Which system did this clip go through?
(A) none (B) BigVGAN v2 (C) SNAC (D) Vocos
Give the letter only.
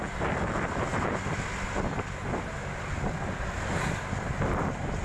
A